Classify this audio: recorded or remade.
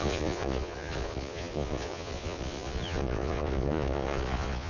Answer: remade